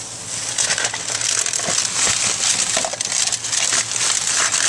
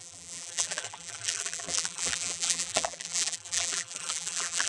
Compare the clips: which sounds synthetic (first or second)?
second